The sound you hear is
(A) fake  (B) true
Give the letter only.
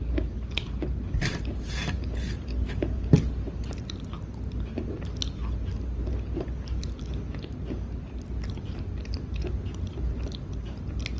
B